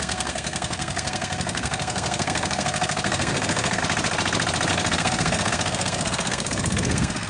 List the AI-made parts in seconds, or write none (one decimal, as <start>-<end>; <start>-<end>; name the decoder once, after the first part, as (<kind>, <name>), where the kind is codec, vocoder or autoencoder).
0.0-3.8 (codec, SNAC); 4.7-7.3